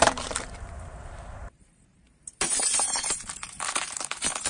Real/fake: fake